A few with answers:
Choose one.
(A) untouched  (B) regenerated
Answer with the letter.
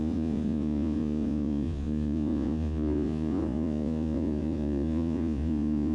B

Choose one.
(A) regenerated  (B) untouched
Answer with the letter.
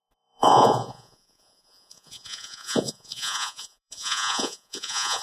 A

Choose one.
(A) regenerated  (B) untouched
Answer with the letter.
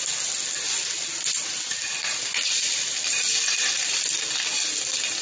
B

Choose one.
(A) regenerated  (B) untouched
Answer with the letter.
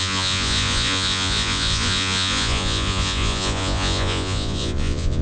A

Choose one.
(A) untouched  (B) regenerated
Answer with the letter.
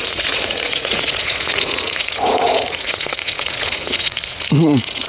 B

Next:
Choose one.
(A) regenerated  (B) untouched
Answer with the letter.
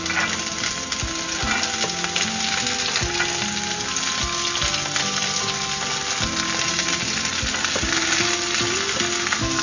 B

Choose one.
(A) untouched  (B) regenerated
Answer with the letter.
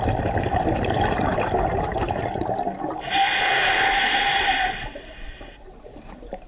A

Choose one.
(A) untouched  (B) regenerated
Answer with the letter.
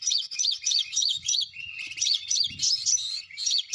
B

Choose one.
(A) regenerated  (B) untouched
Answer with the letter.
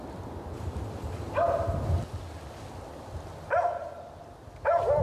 B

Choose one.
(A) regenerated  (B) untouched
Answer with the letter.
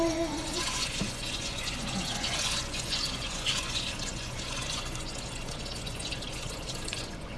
A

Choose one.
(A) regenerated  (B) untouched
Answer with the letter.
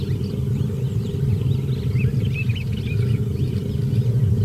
B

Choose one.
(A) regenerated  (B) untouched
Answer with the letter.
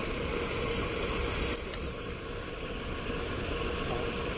B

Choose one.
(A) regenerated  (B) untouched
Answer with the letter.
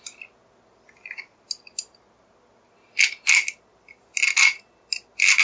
B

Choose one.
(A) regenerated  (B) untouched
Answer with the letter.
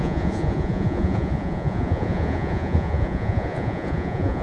A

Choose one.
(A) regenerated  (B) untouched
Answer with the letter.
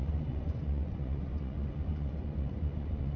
A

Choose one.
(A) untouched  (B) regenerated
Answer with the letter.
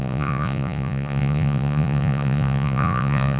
B